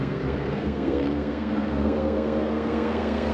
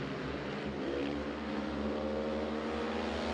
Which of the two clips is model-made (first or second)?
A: first